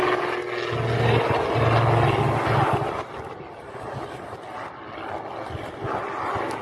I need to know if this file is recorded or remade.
recorded